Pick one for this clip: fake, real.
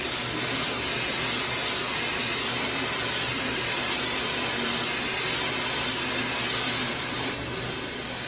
real